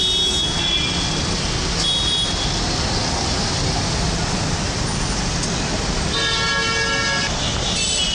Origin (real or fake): real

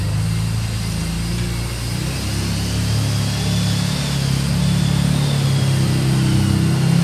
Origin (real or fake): real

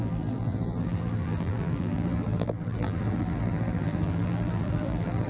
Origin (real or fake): fake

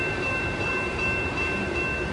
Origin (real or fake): fake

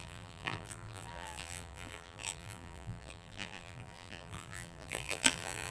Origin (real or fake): fake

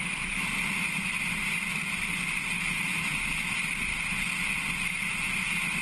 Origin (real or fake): real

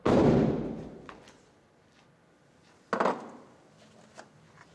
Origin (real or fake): real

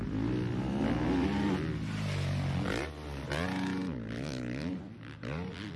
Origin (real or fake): real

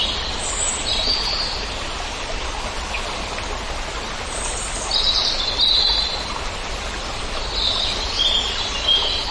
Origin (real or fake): real